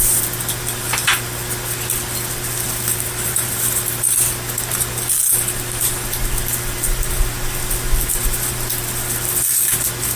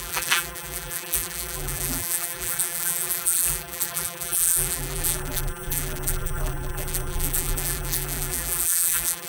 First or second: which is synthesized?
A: second